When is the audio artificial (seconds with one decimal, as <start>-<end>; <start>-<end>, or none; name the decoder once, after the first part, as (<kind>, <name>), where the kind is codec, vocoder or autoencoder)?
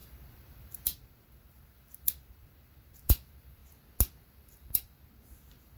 0.0-3.6 (vocoder, BigVGAN v2); 4.2-5.8